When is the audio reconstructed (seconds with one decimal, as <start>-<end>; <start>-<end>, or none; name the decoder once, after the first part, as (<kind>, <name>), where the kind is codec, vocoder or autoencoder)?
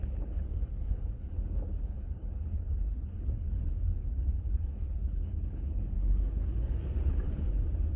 0.0-3.6 (codec, HILCodec); 4.0-7.5